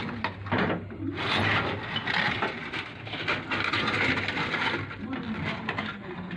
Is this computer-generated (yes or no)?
no